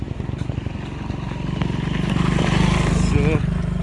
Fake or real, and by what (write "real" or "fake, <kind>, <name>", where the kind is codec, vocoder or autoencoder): real